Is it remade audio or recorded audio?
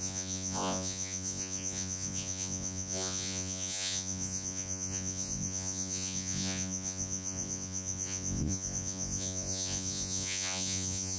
remade